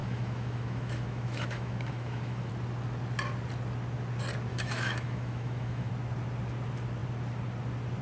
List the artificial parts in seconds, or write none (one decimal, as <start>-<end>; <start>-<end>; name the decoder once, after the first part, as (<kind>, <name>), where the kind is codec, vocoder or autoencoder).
0.0-2.5 (autoencoder, DAC-VAE); 4.5-5.9